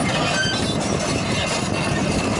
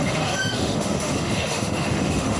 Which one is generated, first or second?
second